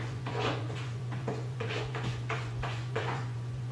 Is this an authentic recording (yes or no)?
no